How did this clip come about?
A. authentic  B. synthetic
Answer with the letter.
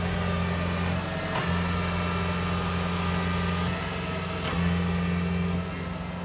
A